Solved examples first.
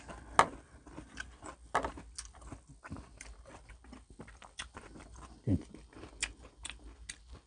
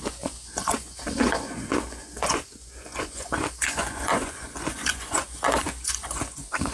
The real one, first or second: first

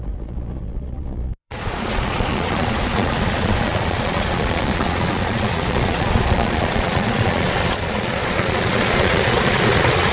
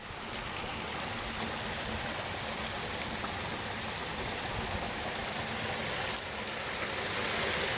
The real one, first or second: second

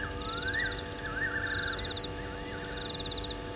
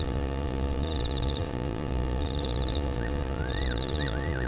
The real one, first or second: first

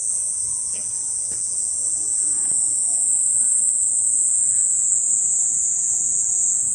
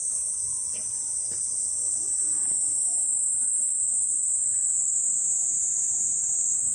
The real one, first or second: second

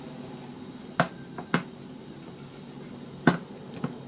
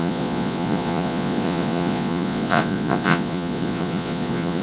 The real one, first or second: first